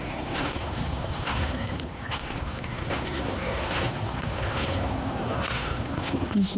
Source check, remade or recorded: remade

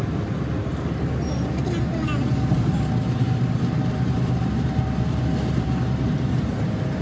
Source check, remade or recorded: recorded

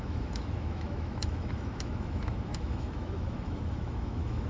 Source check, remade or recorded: remade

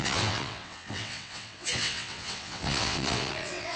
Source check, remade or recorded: remade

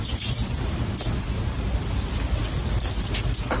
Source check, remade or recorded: remade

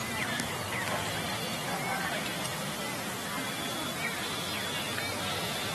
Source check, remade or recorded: recorded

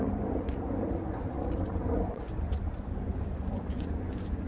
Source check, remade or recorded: remade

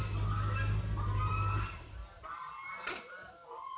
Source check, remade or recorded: recorded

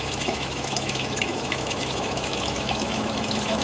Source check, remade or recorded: remade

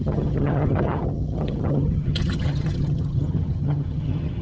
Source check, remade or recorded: remade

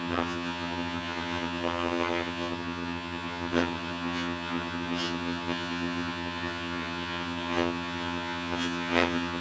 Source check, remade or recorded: remade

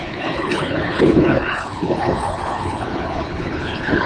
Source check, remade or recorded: remade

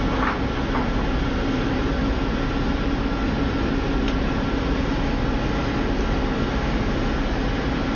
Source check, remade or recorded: recorded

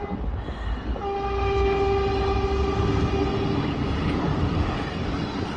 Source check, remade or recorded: recorded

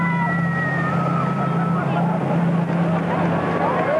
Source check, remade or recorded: recorded